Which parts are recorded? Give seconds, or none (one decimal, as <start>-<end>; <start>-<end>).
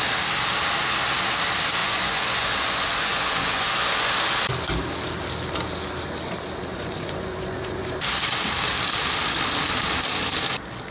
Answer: 0.0-1.8; 4.1-6.7; 7.9-10.9